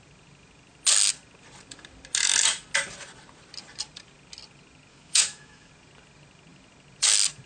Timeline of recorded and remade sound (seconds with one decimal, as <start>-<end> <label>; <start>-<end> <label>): 0.0-4.9 recorded; 4.9-5.7 remade; 5.7-7.5 recorded